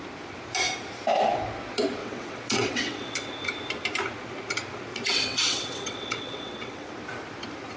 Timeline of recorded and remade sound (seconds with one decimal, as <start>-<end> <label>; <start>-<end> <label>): 0.0-2.0 recorded; 2.0-3.3 remade; 3.3-4.9 recorded; 4.9-6.9 remade; 6.9-7.8 recorded